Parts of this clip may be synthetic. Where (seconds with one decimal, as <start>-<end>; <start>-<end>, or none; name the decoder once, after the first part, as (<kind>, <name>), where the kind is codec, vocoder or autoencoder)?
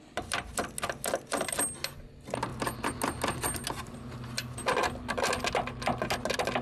none